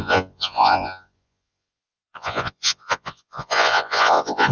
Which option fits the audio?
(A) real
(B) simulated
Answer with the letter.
B